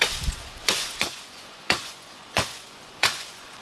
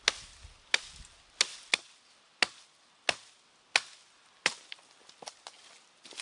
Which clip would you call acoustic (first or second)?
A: second